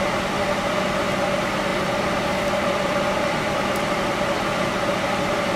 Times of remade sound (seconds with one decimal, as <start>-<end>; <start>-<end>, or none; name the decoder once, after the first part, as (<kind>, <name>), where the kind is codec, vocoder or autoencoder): 0.0-5.6 (vocoder, BigVGAN v2)